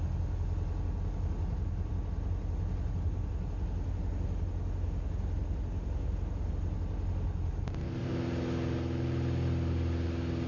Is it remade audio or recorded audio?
recorded